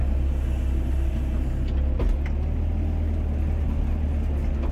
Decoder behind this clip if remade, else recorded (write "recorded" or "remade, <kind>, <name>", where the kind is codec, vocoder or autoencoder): recorded